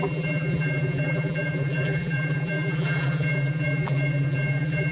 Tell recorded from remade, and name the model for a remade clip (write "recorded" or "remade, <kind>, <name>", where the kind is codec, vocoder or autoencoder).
remade, vocoder, BigVGAN v2